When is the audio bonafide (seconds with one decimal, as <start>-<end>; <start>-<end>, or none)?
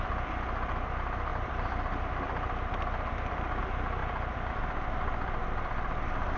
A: 0.0-1.3; 3.6-4.0; 4.5-6.4